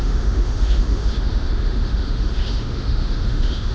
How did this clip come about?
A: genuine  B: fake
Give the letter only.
B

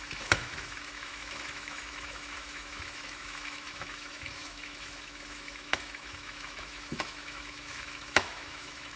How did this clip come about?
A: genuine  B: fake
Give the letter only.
B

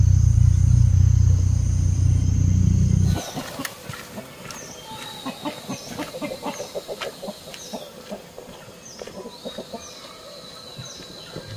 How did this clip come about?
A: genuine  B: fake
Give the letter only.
A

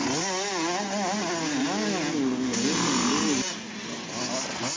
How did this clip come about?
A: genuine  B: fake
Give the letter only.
A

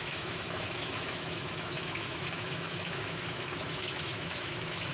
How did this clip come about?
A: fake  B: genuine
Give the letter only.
A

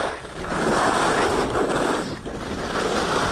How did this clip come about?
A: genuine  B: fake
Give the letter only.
A